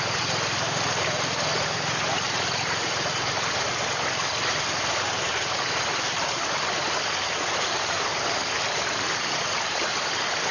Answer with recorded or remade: remade